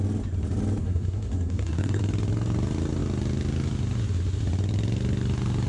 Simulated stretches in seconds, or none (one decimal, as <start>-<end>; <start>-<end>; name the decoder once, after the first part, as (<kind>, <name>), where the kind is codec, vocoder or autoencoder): 0.8-2.0 (codec, SNAC)